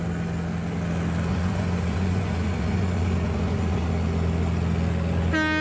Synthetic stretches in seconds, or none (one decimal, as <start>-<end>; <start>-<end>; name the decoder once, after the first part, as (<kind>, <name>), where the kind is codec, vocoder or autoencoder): 1.3-3.9 (vocoder, Vocos)